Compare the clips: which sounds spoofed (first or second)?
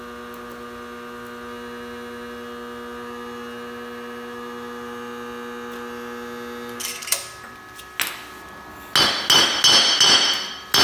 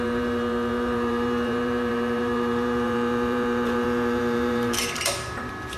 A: second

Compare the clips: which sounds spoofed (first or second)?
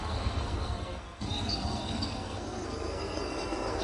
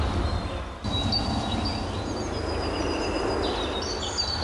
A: first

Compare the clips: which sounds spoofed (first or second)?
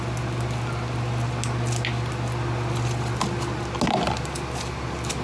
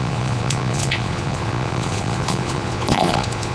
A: second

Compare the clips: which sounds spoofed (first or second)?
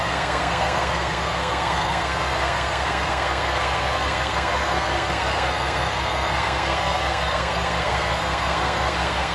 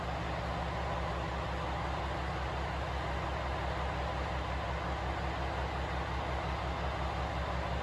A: first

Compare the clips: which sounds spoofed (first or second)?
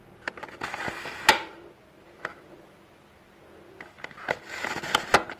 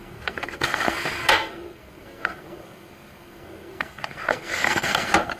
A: second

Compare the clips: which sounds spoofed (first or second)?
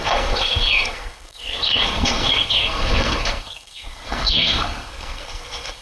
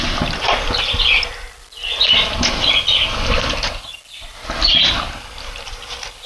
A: first